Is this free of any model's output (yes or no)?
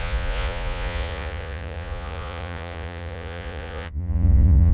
no